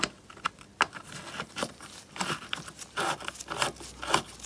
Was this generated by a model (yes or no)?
no